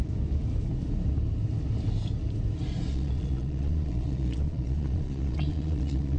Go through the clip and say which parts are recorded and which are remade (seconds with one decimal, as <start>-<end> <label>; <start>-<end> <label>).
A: 0.0-2.9 recorded; 2.9-6.2 remade